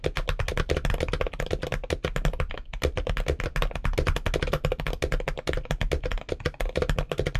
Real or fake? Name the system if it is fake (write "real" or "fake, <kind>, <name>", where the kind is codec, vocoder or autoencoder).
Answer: real